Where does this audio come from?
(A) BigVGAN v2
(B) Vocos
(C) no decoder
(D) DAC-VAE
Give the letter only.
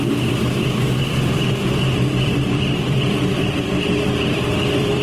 A